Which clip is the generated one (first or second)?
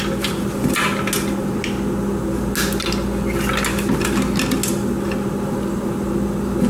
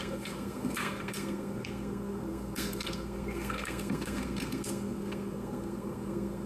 second